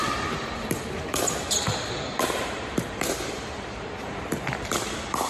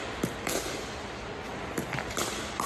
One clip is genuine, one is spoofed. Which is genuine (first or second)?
second